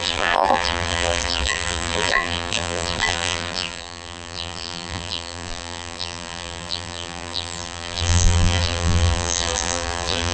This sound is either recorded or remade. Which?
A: remade